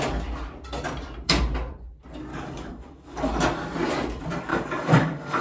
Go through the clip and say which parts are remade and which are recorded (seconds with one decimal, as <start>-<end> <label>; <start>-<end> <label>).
0.0-2.3 recorded; 2.3-3.3 remade; 3.3-4.5 recorded; 4.5-5.4 remade